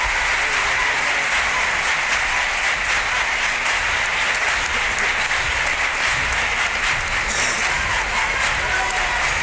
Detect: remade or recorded recorded